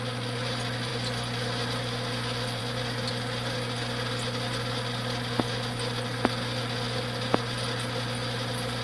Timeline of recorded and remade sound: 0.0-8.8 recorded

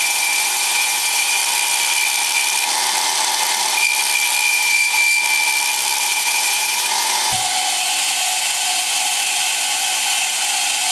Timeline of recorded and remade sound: 0.0-1.4 remade; 1.4-4.5 recorded; 4.5-5.0 remade; 5.0-6.0 recorded; 6.0-10.9 remade

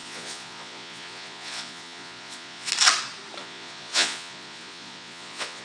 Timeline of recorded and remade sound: 0.0-2.7 remade; 2.7-3.4 recorded; 3.4-5.6 remade

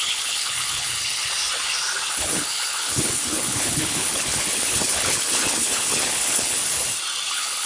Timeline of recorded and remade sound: 0.0-1.2 remade; 1.2-2.1 recorded; 2.1-6.6 remade; 6.6-7.3 recorded; 7.3-7.7 remade